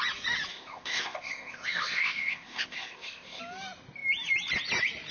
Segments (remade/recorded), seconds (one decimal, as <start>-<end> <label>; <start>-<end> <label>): 0.0-0.5 recorded; 0.5-3.4 remade; 3.4-5.1 recorded